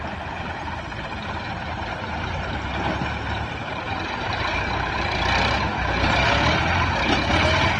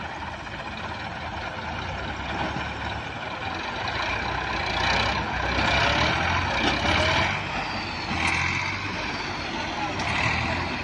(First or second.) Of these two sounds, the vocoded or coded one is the first